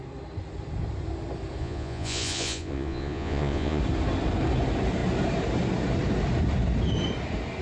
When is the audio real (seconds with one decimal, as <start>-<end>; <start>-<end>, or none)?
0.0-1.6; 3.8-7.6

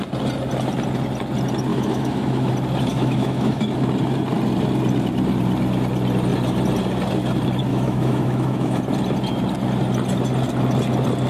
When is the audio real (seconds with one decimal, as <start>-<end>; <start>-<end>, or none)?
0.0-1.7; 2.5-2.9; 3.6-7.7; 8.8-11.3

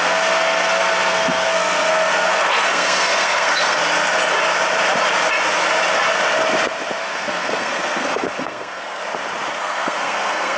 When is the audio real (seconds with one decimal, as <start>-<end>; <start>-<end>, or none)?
3.8-7.0; 9.0-9.5

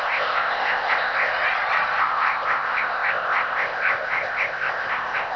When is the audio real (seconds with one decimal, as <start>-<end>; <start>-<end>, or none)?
1.3-2.0

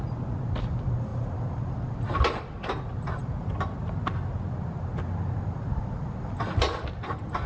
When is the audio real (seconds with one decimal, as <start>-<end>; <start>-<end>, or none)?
0.0-7.5

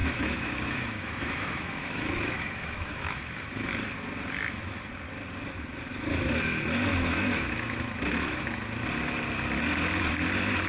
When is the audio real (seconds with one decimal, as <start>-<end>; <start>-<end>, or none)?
3.7-6.9; 7.8-10.7